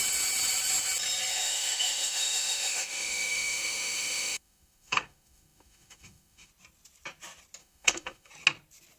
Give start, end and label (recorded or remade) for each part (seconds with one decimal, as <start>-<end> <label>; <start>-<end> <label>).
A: 0.0-1.3 recorded; 1.3-6.5 remade; 6.5-7.6 recorded; 7.6-8.3 remade; 8.3-9.0 recorded